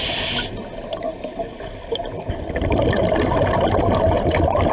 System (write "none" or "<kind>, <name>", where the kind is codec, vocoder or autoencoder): none